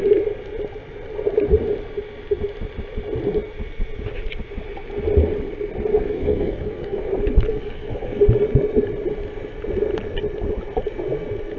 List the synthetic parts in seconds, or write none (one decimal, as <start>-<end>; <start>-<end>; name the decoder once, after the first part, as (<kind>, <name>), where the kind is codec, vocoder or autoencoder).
5.9-7.0 (codec, SNAC); 7.5-8.2